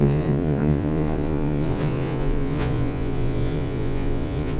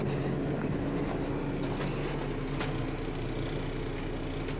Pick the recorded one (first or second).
second